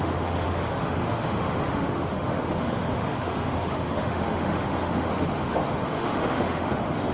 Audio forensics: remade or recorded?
remade